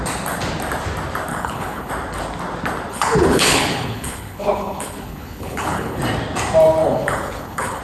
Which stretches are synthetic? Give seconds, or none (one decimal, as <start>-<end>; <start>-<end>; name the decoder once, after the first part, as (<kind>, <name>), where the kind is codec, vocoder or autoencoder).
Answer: 1.3-1.9 (codec, HILCodec); 2.9-6.0; 6.8-7.8